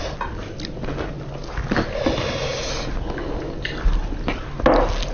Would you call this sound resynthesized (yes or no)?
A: no